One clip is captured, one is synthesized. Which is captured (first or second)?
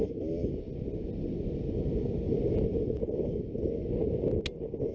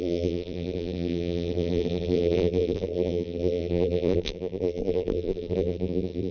first